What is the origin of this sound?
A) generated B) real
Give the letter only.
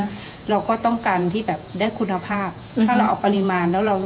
A